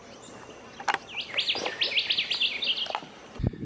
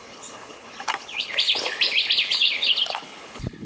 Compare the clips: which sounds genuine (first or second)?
first